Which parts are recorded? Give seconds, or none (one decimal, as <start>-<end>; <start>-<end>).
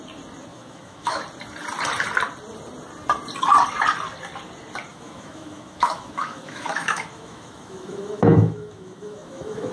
0.0-0.5; 1.2-4.9